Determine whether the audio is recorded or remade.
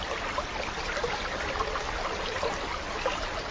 recorded